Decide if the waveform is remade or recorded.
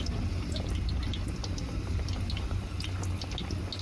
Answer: recorded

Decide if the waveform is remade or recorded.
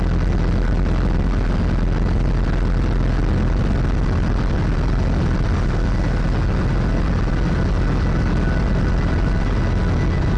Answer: recorded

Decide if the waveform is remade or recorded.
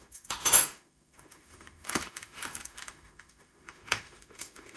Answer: remade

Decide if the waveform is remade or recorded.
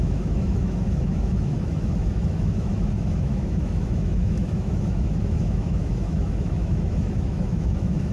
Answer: remade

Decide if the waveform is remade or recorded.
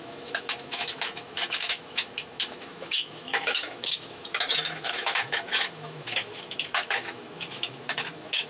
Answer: remade